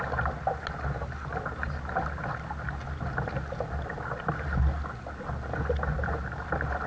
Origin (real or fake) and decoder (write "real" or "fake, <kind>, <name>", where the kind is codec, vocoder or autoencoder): real